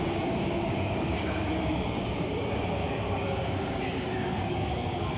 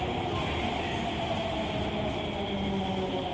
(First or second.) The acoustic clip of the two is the second